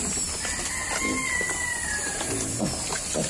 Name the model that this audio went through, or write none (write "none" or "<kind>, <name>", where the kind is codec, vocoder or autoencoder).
none